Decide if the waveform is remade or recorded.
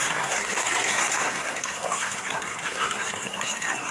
remade